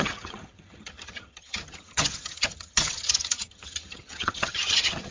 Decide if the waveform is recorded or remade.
remade